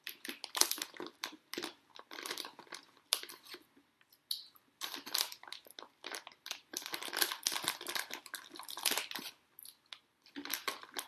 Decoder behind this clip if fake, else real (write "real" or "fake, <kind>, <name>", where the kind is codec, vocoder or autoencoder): real